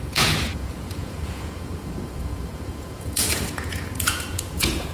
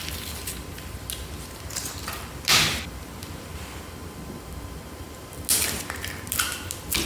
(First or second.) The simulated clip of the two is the first